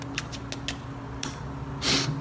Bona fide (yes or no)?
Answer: yes